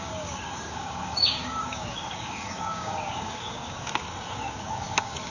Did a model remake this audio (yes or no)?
yes